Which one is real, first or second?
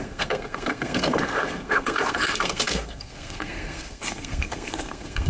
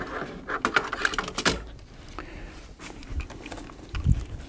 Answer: second